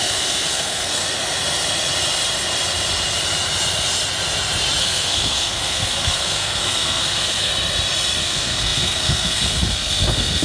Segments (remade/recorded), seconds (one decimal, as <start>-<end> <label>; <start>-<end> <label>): 0.0-1.0 remade; 1.0-4.8 recorded; 4.8-7.5 remade; 7.5-8.2 recorded; 8.2-10.4 remade